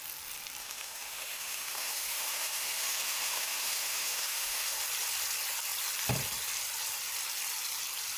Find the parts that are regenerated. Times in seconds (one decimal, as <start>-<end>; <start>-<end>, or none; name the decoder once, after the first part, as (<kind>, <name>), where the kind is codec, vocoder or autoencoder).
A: 0.6-4.8 (autoencoder, DAC-VAE)

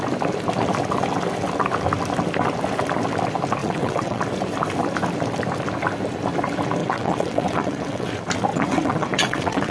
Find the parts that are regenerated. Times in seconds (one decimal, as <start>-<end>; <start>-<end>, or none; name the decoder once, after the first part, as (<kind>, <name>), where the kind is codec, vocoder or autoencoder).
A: 3.6-4.2 (vocoder, WaveNeXt); 6.8-8.1; 8.5-9.7

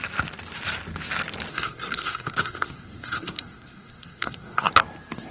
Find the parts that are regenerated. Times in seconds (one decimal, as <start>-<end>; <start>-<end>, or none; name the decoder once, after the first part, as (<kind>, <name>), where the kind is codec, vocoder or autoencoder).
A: 1.5-4.7 (codec, SNAC)

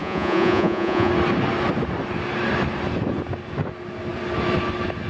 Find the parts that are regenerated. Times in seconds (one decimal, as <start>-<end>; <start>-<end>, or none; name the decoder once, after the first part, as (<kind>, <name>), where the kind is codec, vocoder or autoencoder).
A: 0.0-1.1 (vocoder, Vocos)